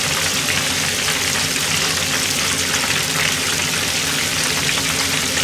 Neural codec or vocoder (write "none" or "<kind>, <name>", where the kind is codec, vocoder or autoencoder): none